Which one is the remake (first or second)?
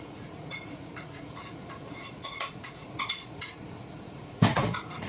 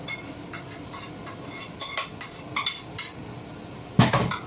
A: first